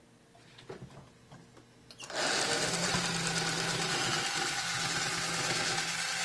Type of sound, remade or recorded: recorded